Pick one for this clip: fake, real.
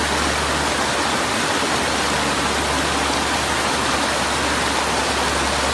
real